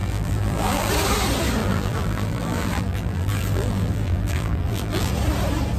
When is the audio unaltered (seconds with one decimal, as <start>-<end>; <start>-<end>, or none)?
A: 0.9-1.6; 5.1-5.8